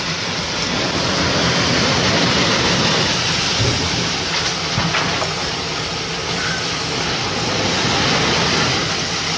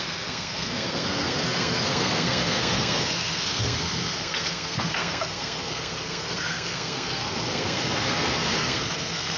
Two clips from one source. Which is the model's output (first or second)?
second